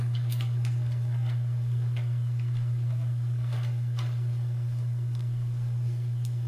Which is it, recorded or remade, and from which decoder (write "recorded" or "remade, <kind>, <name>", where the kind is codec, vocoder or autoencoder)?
remade, codec, SNAC